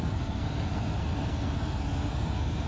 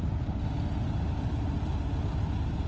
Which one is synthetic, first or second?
first